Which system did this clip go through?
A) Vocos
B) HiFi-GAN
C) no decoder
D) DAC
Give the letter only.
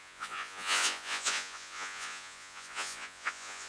A